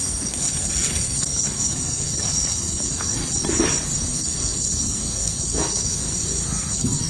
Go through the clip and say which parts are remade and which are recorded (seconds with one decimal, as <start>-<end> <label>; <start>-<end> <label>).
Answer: 0.0-3.2 remade; 3.2-4.1 recorded; 4.1-7.1 remade